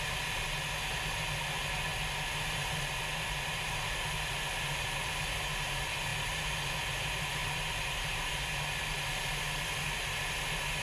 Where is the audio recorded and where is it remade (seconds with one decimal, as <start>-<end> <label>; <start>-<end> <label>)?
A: 0.0-7.4 recorded; 7.4-8.3 remade; 8.3-10.8 recorded